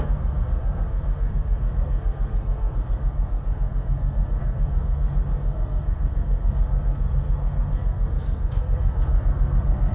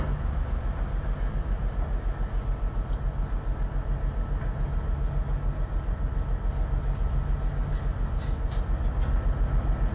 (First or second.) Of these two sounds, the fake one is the first